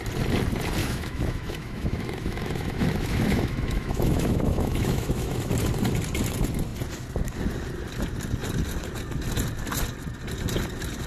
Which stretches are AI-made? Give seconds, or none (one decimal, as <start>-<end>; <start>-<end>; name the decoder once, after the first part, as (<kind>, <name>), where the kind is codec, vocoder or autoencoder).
0.8-5.5 (autoencoder, DAC-VAE)